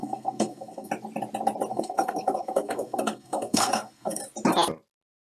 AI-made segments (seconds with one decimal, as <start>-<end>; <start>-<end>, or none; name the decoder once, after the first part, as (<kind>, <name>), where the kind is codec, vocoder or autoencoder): 0.0-0.9 (codec, SNAC); 1.7-4.2